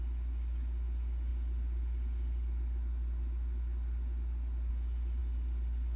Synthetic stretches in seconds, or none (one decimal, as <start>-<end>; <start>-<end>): none